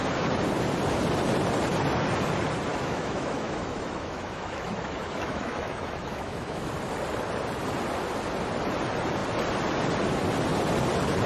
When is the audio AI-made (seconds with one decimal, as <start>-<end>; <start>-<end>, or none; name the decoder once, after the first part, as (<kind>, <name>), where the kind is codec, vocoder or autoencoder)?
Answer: 2.7-6.7 (autoencoder, DAC-VAE)